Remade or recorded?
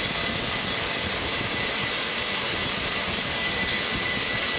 recorded